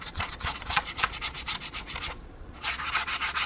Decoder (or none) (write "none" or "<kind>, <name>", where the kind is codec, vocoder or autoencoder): vocoder, Vocos